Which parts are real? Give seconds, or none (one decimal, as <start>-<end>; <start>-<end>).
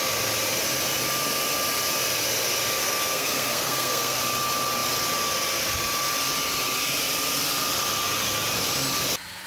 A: 0.0-2.8; 4.2-9.5